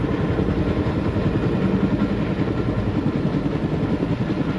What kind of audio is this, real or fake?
real